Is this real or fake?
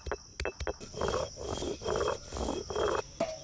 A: real